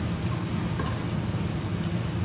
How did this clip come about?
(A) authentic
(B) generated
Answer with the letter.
A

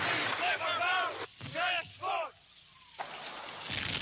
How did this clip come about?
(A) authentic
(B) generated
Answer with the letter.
A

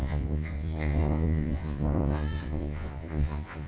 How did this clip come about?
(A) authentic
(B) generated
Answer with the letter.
B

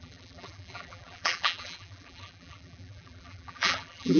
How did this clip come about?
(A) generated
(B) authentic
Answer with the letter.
A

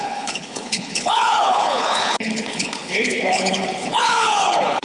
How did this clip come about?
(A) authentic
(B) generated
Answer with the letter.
B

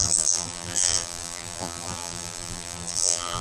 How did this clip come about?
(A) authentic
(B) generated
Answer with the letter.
B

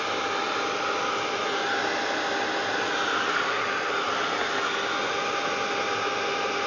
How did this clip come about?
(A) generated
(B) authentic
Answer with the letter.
B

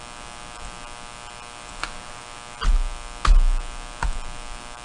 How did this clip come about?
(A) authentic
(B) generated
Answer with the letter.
A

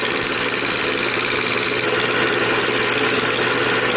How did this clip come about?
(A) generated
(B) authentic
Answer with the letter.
B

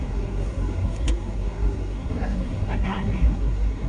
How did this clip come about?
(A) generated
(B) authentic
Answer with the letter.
A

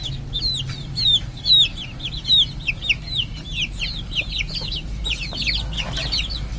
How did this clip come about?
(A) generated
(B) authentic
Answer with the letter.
B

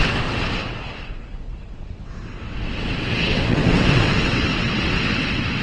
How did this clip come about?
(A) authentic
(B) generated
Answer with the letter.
B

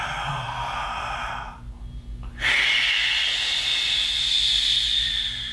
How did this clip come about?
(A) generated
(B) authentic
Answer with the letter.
B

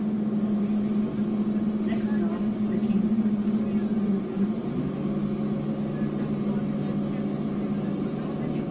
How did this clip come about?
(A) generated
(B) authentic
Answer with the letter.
B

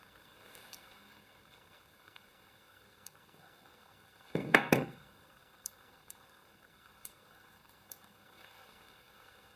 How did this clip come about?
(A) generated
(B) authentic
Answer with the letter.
A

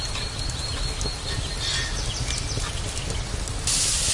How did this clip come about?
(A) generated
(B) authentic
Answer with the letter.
B